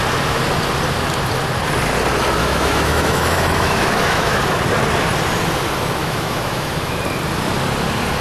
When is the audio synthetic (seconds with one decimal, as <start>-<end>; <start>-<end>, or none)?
2.4-4.4; 6.0-7.0